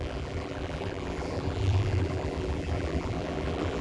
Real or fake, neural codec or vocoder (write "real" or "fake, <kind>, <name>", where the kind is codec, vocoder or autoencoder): fake, vocoder, BigVGAN v2